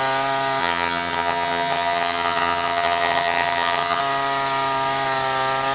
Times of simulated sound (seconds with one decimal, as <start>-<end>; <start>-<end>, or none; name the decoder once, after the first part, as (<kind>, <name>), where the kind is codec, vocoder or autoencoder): 0.6-4.0 (vocoder, HiFi-GAN)